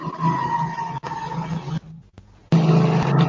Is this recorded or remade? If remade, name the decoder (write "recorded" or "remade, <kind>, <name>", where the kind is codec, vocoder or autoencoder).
recorded